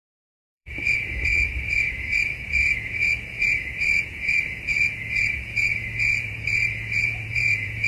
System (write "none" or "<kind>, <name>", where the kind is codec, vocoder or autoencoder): vocoder, Vocos